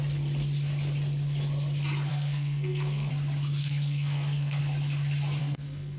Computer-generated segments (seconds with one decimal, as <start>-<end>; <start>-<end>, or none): 2.1-3.1; 3.6-4.6; 5.4-6.0